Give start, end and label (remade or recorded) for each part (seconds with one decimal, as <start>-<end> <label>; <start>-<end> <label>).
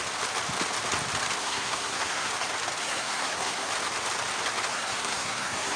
0.0-1.4 recorded; 1.4-2.3 remade; 2.3-2.8 recorded; 2.8-3.7 remade; 3.7-4.7 recorded; 4.7-5.8 remade